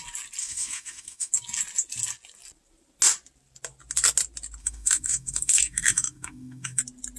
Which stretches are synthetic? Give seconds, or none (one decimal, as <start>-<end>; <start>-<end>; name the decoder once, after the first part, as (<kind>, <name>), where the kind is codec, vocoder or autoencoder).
0.4-1.3 (autoencoder, DAC-VAE); 4.6-6.8